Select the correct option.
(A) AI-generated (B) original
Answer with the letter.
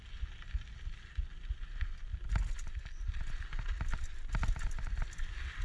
B